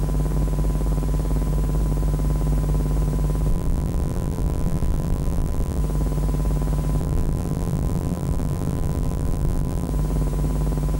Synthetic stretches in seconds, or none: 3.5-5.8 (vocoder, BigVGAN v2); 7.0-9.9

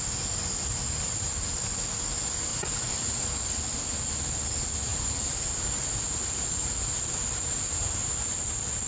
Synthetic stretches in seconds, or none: 2.5-3.6 (vocoder, BigVGAN v2); 4.9-8.4

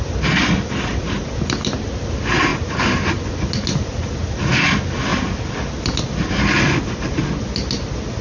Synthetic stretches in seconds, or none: none

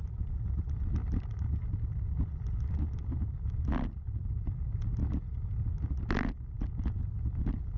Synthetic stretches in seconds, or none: 1.0-4.3 (vocoder, BigVGAN v2)

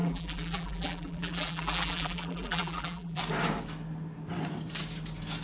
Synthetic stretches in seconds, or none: 0.0-3.2 (vocoder, BigVGAN v2)